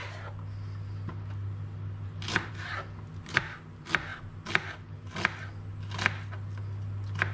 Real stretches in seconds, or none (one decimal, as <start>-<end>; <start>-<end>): 0.0-7.3